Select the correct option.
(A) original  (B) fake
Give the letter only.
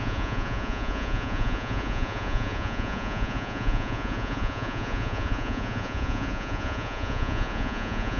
B